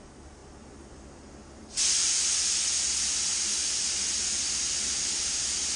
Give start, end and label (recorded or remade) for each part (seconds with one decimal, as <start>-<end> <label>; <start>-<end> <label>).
0.0-5.8 recorded